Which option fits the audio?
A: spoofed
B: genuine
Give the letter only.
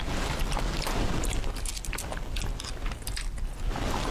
B